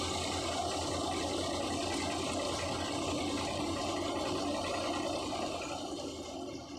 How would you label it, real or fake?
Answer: real